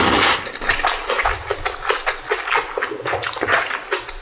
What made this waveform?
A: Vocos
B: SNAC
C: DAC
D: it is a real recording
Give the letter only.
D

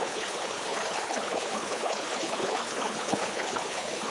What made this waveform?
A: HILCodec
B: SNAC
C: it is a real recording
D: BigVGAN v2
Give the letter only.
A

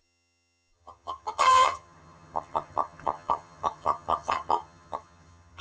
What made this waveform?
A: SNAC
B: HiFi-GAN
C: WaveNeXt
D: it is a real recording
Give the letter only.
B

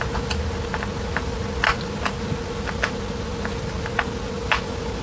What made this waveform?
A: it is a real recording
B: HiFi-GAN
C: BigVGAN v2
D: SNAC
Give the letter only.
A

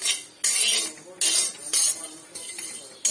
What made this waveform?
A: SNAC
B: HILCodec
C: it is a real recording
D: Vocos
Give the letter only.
C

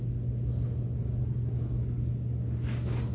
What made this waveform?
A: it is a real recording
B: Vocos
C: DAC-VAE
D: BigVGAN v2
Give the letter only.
A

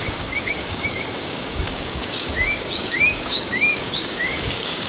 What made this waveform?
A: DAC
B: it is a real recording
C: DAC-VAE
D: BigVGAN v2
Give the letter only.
A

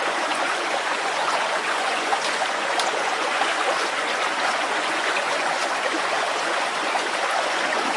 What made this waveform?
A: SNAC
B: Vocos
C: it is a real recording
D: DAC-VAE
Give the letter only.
B